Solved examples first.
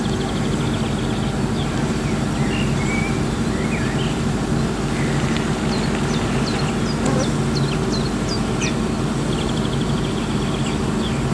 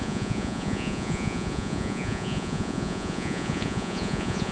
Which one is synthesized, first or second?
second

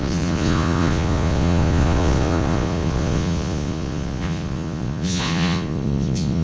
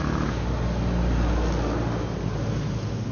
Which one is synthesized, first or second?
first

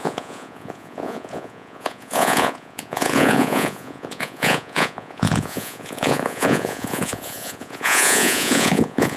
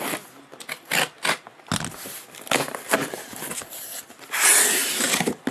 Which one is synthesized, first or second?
first